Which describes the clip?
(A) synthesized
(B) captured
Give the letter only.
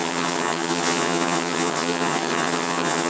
A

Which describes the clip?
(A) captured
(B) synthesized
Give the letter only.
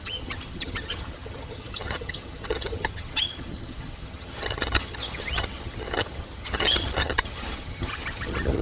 B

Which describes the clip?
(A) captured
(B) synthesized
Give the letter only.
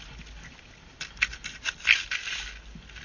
A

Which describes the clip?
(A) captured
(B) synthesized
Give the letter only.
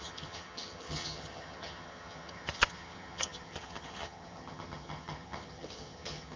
B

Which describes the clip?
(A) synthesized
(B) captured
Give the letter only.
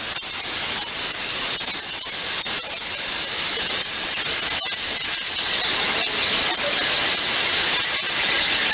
B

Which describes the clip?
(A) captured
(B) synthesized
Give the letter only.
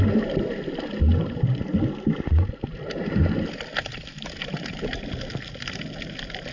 A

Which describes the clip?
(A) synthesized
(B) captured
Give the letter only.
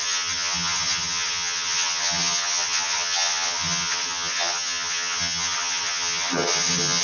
A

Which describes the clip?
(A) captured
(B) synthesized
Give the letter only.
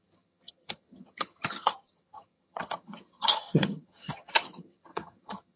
B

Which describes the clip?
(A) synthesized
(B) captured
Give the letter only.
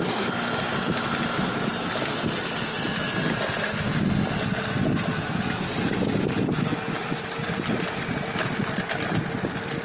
B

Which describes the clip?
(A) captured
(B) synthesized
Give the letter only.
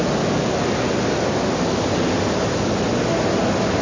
A